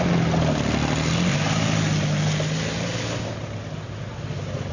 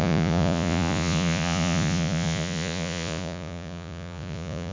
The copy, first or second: second